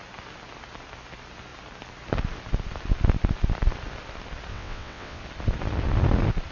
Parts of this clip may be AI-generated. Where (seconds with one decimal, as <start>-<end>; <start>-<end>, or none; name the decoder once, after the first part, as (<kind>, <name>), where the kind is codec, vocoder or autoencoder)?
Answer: 4.5-5.2 (vocoder, WaveNeXt)